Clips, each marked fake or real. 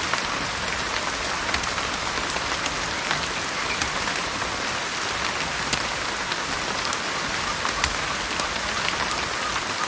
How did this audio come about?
real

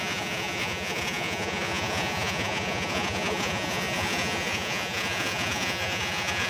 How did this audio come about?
fake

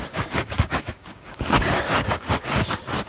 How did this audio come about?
fake